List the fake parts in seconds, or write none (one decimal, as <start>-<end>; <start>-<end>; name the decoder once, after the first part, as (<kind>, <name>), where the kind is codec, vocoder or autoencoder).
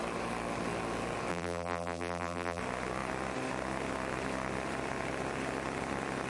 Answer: 1.3-2.6 (vocoder, BigVGAN v2)